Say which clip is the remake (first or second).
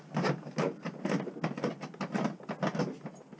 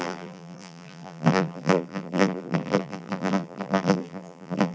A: second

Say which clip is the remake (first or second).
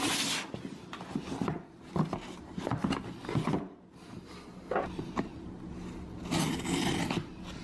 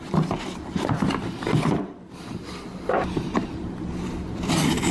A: second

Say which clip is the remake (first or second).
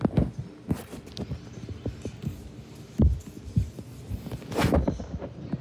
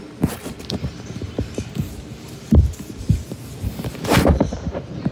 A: second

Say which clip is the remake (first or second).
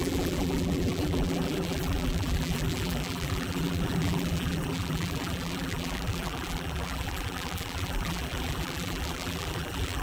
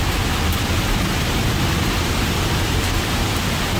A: first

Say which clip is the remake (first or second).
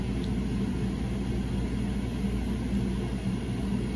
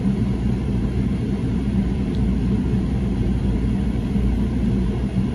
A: second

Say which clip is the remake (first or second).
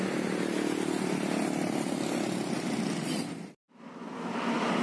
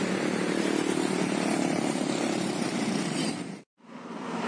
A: second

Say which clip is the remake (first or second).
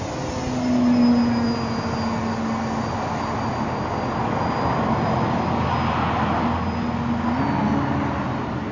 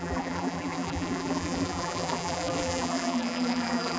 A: second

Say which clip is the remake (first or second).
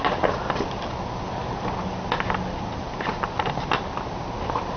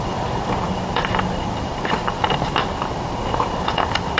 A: second